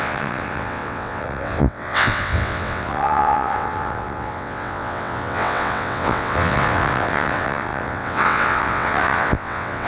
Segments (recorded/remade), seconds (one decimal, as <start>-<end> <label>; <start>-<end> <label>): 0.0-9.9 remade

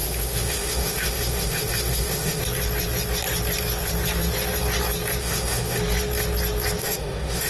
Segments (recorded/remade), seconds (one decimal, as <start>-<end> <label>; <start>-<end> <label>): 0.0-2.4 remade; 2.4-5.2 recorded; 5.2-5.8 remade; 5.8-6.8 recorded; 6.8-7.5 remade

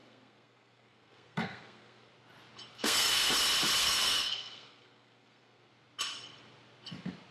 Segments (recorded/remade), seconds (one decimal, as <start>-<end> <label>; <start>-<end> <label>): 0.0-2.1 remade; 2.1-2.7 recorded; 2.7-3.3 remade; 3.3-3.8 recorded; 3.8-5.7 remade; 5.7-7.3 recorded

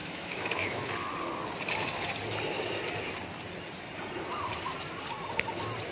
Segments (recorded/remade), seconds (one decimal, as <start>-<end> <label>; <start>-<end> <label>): 0.0-0.9 remade; 0.9-5.9 recorded

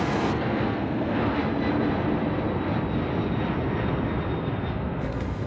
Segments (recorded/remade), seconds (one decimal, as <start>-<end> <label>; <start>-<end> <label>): 0.0-1.4 remade; 1.4-4.7 recorded; 4.7-5.5 remade

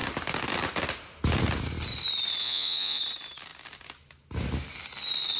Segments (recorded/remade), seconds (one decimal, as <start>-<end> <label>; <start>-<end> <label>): 0.0-2.4 recorded; 2.4-3.0 remade; 3.0-5.4 recorded

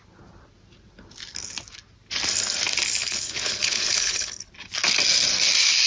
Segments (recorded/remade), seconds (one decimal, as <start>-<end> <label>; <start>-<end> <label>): 0.0-3.0 recorded; 3.0-4.5 remade; 4.5-5.9 recorded